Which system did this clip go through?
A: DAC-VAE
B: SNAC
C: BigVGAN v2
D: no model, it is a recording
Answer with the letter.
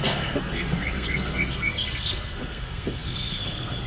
B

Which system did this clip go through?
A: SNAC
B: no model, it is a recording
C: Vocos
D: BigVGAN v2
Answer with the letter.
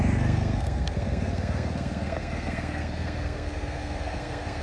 A